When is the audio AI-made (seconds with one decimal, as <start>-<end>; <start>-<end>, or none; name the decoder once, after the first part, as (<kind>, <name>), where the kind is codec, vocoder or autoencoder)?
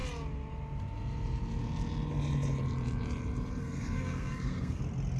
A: 3.6-4.8 (codec, SNAC)